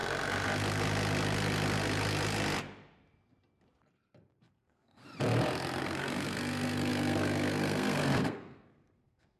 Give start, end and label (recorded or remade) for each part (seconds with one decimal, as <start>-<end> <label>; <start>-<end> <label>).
0.0-4.4 recorded; 4.4-5.0 remade; 5.0-5.8 recorded; 5.8-9.4 remade